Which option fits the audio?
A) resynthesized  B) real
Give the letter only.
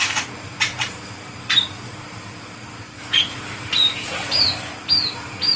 A